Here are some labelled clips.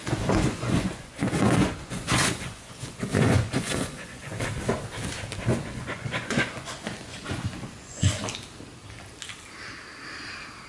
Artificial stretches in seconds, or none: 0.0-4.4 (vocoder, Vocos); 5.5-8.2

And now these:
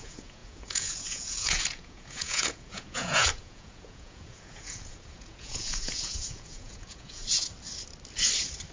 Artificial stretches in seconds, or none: 0.0-7.2 (vocoder, Vocos)

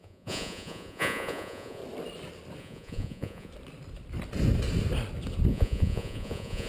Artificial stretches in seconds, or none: 0.0-1.8 (vocoder, Vocos); 2.6-3.5; 5.5-6.7